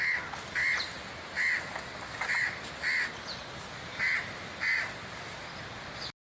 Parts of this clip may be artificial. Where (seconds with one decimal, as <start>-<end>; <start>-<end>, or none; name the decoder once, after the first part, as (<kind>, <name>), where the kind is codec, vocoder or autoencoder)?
none